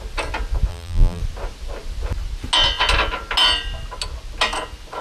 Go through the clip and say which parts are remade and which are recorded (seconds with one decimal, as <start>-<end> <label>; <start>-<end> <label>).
0.0-0.7 recorded; 0.7-1.2 remade; 1.2-5.0 recorded